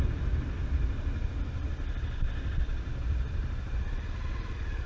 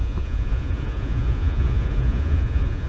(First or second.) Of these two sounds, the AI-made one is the second